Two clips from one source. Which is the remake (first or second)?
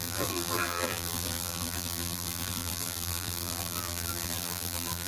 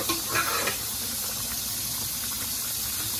first